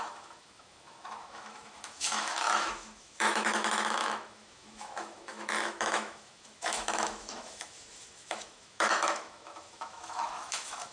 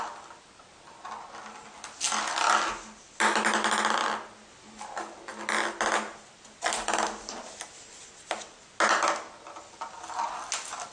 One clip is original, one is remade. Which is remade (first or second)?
first